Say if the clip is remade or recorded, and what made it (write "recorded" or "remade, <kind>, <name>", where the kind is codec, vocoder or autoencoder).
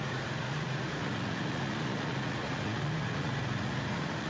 remade, vocoder, Vocos